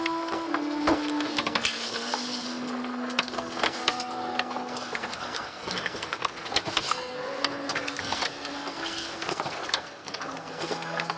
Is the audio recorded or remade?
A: remade